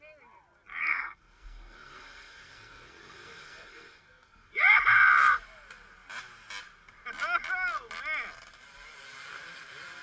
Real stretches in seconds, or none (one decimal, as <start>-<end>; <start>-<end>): 0.0-0.8; 4.5-10.0

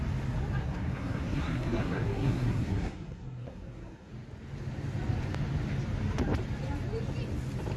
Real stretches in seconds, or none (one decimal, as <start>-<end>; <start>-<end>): 0.0-0.6; 4.1-7.8

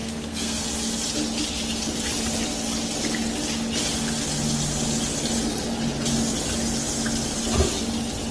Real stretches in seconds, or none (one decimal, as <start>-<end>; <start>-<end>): 0.6-8.3

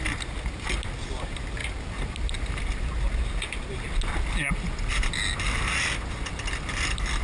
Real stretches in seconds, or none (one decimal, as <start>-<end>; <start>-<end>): 0.0-7.2